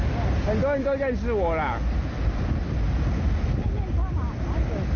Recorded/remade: recorded